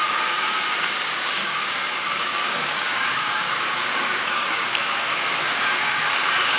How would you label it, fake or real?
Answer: fake